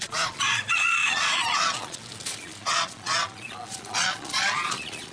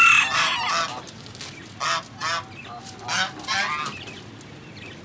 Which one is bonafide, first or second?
second